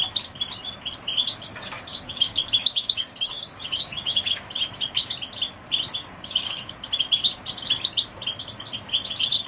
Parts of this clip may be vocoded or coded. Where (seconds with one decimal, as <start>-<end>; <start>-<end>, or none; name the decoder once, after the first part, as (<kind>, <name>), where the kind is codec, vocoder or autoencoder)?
1.5-4.5 (codec, DAC); 6.0-6.7